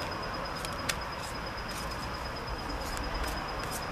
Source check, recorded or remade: recorded